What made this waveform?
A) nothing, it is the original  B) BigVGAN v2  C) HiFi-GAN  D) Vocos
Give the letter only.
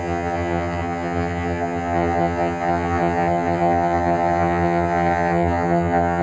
C